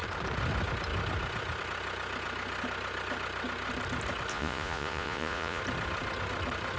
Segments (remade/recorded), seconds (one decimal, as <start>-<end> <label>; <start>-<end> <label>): 0.0-4.3 recorded; 4.3-5.6 remade; 5.6-6.8 recorded